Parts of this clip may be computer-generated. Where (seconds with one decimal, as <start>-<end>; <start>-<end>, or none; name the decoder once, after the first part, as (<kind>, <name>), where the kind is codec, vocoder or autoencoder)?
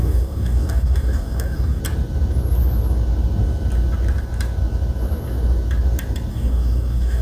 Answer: 0.0-1.8 (codec, DAC); 6.3-7.2